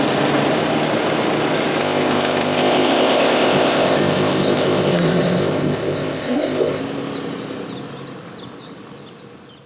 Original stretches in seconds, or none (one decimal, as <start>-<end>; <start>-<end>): 0.0-1.8; 6.8-9.7